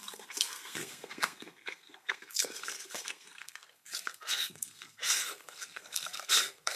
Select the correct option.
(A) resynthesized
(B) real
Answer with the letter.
A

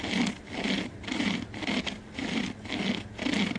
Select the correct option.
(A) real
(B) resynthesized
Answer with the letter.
A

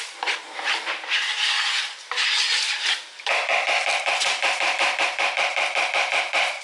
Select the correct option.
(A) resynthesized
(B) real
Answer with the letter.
A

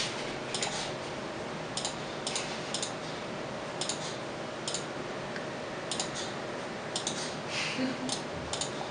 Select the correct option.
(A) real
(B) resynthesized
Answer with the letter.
A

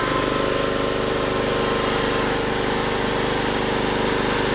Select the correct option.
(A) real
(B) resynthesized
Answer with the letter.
A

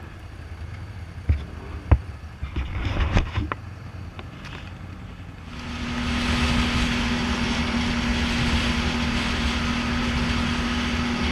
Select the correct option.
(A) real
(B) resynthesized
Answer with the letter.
A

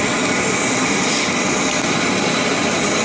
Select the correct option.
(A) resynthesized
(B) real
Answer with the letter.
B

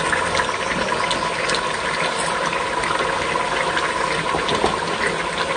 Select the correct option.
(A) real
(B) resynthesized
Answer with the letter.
A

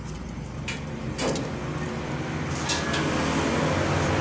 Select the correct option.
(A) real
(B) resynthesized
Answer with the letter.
A